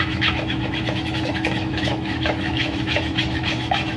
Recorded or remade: remade